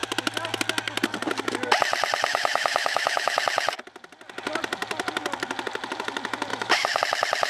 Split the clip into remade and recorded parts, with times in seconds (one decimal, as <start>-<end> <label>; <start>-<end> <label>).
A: 0.0-2.3 recorded; 2.3-3.4 remade; 3.4-6.5 recorded; 6.5-7.0 remade; 7.0-7.5 recorded